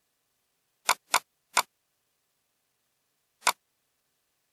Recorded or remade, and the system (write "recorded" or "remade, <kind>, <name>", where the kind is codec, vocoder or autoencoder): recorded